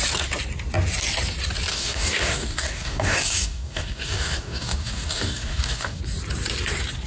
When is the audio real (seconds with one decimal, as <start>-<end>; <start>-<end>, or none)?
0.0-1.7; 6.0-7.1